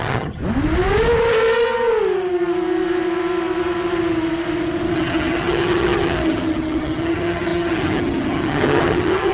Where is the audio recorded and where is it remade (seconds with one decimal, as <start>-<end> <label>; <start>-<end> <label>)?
0.0-0.4 remade; 0.4-4.9 recorded; 4.9-9.3 remade